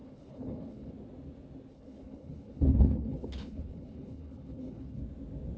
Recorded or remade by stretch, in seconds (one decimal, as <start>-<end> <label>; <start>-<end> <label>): 0.0-0.9 remade; 0.9-1.7 recorded; 1.7-5.0 remade; 5.0-5.6 recorded